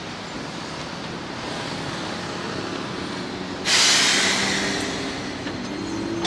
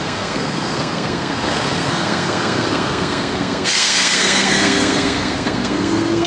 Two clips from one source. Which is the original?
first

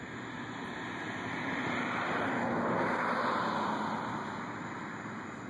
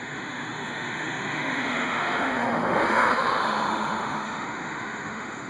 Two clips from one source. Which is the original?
first